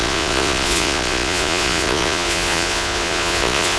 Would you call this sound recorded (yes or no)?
no